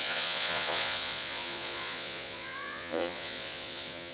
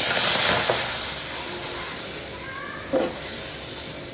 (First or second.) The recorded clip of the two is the second